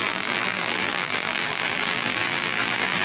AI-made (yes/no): yes